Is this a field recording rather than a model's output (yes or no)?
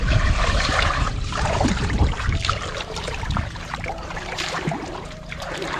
no